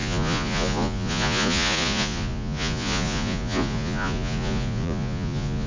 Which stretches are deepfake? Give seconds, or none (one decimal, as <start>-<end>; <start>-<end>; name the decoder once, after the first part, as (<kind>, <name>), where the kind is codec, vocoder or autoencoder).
0.0-5.7 (vocoder, Vocos)